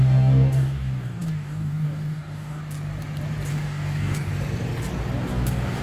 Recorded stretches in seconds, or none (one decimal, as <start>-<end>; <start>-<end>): 2.6-3.5; 4.3-5.3